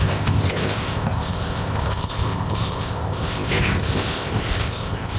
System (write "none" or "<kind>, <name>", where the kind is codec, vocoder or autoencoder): codec, ZipCodec